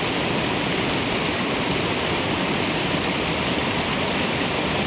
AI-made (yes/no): no